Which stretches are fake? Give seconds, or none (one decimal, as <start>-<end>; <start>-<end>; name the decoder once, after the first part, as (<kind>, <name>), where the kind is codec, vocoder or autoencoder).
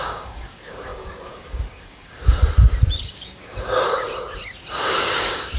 0.0-2.4 (codec, DAC); 3.0-4.1; 4.7-5.6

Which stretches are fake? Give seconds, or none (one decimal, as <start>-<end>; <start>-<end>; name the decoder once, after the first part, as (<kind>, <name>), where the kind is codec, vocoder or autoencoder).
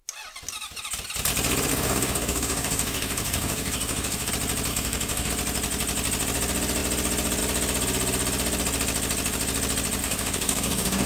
1.7-4.3 (codec, DAC); 4.7-5.3; 10.0-11.1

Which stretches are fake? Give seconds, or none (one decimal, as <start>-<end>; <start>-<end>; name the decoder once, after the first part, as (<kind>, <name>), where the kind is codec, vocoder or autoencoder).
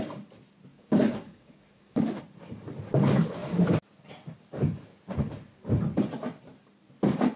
0.7-2.2 (codec, DAC)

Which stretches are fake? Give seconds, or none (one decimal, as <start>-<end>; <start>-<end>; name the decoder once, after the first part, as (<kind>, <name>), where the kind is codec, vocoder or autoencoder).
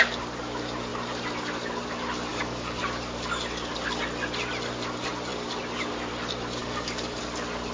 2.3-2.8 (codec, DAC); 6.6-7.2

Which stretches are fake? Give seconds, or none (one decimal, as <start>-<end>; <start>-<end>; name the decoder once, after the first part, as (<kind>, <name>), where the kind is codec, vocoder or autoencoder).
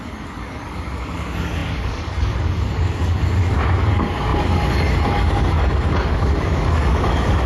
0.0-7.5 (codec, DAC)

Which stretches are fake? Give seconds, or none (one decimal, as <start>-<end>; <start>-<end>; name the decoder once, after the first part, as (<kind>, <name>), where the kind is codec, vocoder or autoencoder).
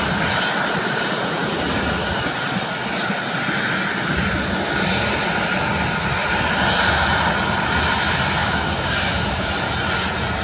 8.4-9.5 (codec, DAC)